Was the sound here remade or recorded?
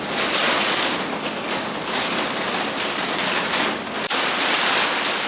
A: recorded